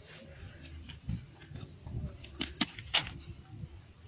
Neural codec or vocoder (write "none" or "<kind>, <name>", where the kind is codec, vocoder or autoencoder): none